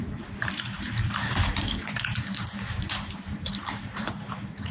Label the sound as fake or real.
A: fake